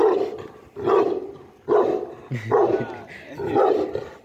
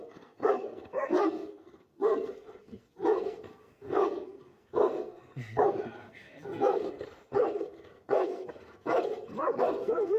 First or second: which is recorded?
first